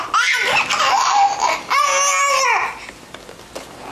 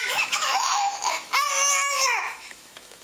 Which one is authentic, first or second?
first